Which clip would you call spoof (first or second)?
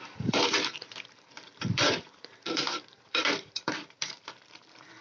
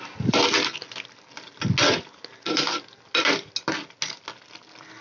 first